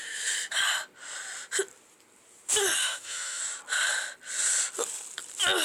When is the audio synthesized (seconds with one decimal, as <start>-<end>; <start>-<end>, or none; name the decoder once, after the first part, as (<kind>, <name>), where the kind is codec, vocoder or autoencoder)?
2.8-3.4 (autoencoder, DAC-VAE)